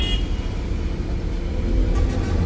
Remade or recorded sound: recorded